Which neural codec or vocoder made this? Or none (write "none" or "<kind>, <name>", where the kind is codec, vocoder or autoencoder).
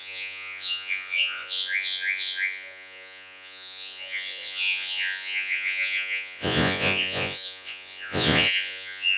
vocoder, Vocos